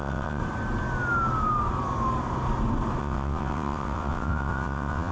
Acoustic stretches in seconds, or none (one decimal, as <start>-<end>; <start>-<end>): 0.4-3.0